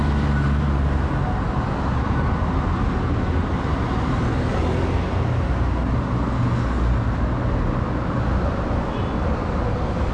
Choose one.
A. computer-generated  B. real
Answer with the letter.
B